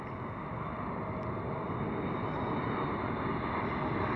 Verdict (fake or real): real